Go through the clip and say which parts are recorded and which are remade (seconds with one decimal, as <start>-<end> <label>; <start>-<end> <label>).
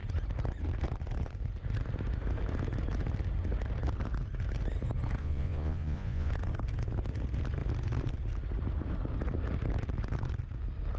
0.0-5.2 recorded; 5.2-6.3 remade; 6.3-11.0 recorded